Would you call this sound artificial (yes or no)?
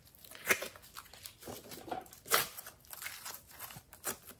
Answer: no